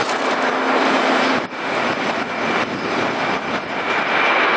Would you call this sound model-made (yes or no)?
no